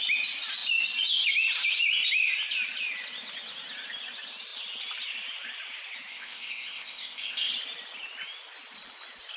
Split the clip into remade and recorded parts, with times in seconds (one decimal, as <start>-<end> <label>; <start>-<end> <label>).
0.0-6.1 recorded; 6.1-7.5 remade; 7.5-9.4 recorded